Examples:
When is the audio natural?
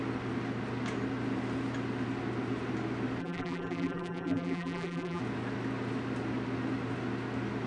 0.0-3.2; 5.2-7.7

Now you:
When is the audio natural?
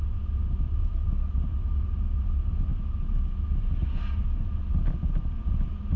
0.0-6.0